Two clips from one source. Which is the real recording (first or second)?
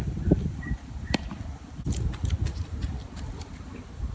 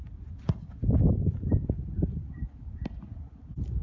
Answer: second